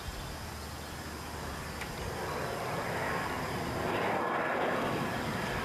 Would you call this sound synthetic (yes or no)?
no